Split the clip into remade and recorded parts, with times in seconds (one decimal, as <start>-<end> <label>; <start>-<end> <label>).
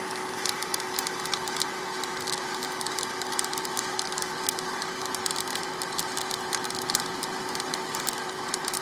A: 0.0-8.8 recorded